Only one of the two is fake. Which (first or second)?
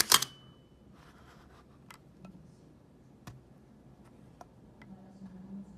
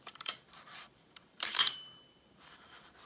second